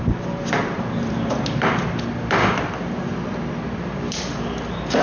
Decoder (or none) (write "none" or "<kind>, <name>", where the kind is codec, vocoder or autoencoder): none